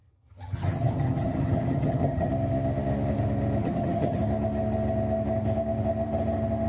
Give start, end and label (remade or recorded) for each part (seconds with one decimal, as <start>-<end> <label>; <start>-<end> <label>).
0.0-2.3 remade; 2.3-3.6 recorded; 3.6-4.2 remade; 4.2-6.7 recorded